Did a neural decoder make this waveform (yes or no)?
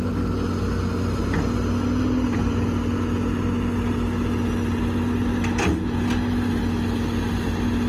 no